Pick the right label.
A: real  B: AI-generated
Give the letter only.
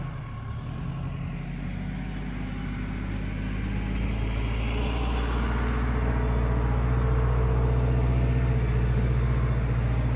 A